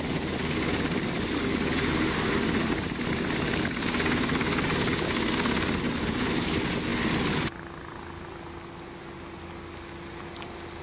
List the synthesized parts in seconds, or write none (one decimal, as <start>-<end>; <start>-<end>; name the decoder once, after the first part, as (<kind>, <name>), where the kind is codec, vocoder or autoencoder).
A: none